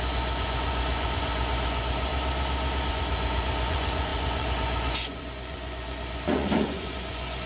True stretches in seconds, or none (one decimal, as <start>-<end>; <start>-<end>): 2.1-2.9